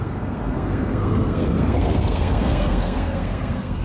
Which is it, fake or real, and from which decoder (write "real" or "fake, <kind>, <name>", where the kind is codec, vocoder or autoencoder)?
fake, codec, SNAC